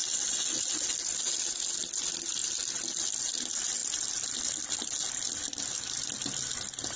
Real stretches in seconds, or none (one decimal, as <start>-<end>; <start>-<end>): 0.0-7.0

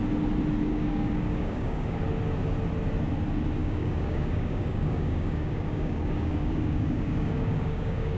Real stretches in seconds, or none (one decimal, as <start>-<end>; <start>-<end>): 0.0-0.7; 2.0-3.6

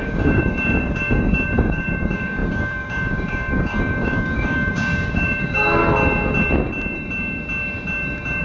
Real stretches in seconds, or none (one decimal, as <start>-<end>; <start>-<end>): 5.8-8.4